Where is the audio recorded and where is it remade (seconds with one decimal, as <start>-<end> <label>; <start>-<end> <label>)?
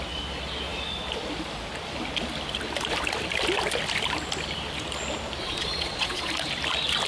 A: 0.0-5.4 recorded; 5.4-6.3 remade; 6.3-7.1 recorded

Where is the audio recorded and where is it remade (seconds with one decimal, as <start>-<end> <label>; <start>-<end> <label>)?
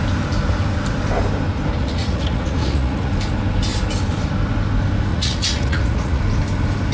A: 0.0-1.8 recorded; 1.8-3.1 remade; 3.1-5.1 recorded; 5.1-6.2 remade; 6.2-6.9 recorded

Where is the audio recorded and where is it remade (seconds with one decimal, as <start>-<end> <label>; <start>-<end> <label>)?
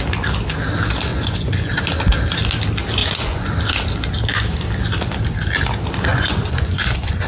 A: 0.0-1.1 recorded; 1.1-1.8 remade; 1.8-3.0 recorded; 3.0-3.5 remade; 3.5-6.1 recorded; 6.1-7.3 remade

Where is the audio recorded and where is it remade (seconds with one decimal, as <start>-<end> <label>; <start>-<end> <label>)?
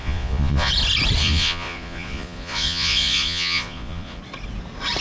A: 0.0-0.7 remade; 0.7-1.2 recorded; 1.2-4.2 remade; 4.2-5.0 recorded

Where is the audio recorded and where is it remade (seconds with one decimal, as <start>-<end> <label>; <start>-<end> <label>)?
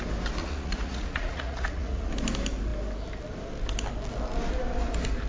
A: 0.0-0.4 recorded; 0.4-2.1 remade; 2.1-5.3 recorded